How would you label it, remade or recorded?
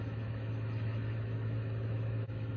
remade